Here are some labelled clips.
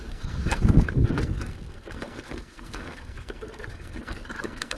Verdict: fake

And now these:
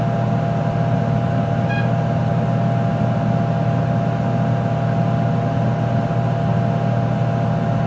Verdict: real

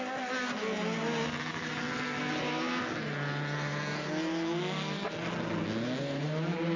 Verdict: real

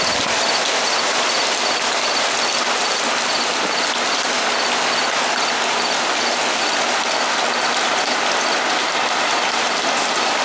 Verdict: real